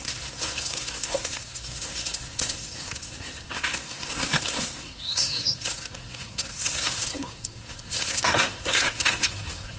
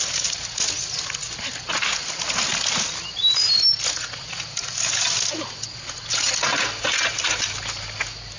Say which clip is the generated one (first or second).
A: first